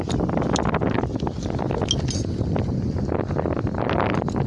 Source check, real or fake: real